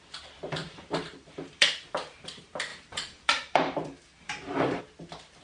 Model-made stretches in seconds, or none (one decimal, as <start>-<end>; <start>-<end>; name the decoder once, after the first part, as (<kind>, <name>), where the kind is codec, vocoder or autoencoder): 0.6-1.7 (vocoder, BigVGAN v2); 2.7-4.8